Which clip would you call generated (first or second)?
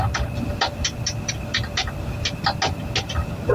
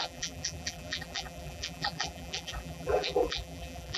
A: second